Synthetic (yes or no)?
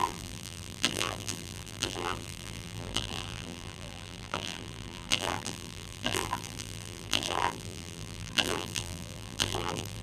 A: yes